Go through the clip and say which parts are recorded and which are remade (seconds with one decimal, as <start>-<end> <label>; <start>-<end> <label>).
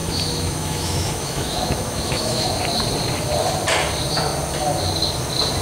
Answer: 0.0-2.5 remade; 2.5-5.6 recorded